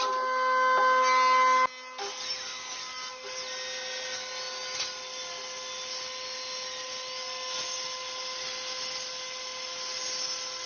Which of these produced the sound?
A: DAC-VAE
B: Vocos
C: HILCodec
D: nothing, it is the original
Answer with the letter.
D